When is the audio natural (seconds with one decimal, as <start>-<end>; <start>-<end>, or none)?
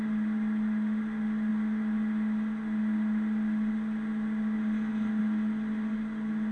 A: 0.0-6.5